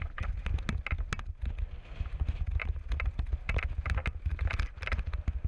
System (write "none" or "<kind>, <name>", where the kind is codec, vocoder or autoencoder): none